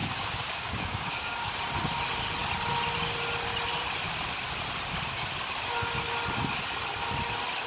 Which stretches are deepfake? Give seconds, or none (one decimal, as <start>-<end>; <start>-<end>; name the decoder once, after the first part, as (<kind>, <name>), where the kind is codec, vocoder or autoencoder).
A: 0.0-1.5 (codec, DAC)